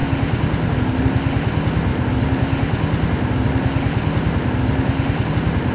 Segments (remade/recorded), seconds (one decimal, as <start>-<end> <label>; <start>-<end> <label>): 0.0-5.7 recorded